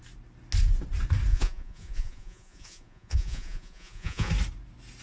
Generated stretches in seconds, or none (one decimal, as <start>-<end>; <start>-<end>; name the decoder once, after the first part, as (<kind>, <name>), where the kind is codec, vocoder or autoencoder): 1.3-4.3 (vocoder, Vocos)